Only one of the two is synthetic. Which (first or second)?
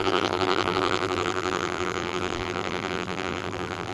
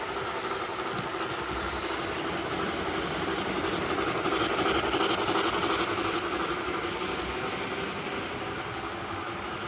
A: first